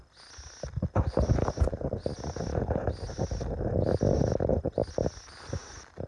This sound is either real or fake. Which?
real